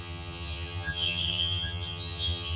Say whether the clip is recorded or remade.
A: remade